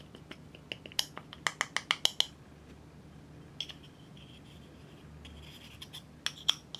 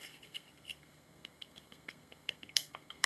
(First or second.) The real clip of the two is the first